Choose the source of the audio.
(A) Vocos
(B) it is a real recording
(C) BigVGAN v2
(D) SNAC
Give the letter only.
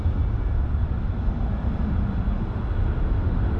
B